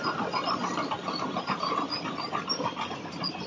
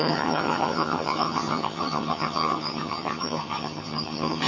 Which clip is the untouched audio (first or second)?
first